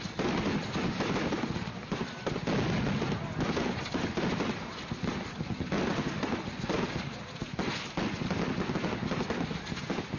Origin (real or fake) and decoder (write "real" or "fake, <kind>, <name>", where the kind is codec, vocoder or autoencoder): real